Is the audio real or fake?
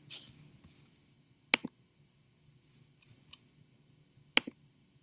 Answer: real